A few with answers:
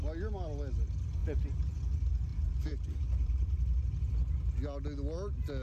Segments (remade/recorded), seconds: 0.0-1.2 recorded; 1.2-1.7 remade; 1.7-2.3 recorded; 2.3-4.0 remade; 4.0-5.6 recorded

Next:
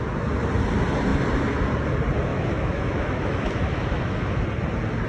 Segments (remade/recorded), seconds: 0.0-2.3 recorded; 2.3-4.4 remade; 4.4-5.1 recorded

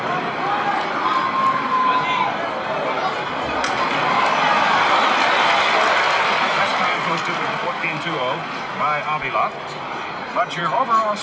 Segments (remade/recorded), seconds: 0.0-11.2 recorded

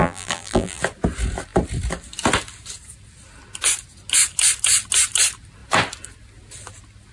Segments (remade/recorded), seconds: 0.0-0.8 remade; 0.8-7.1 recorded

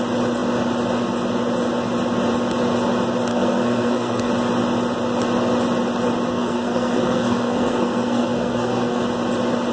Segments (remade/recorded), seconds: 0.0-3.3 recorded; 3.3-4.3 remade; 4.3-6.3 recorded; 6.3-9.0 remade; 9.0-9.7 recorded

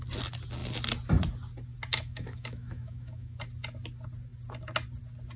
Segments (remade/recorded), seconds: 0.0-1.9 recorded; 1.9-3.4 remade; 3.4-5.4 recorded

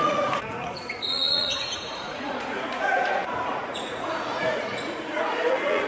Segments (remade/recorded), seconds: 0.0-5.9 remade

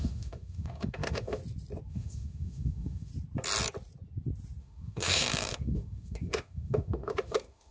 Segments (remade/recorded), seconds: 0.0-1.4 remade; 1.4-1.9 recorded; 1.9-3.1 remade; 3.1-4.6 recorded; 4.6-7.7 remade